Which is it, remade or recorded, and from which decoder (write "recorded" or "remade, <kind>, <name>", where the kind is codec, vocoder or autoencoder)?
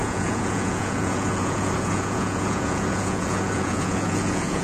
remade, vocoder, Vocos